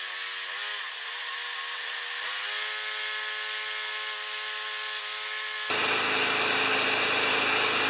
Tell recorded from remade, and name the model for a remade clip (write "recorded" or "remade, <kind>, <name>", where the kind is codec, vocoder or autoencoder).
recorded